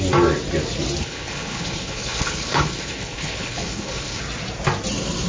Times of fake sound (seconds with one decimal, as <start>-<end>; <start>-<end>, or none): 1.0-4.2